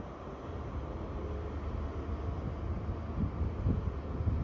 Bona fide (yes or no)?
yes